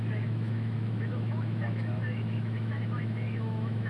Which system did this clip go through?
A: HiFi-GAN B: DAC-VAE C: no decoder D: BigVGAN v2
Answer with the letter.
B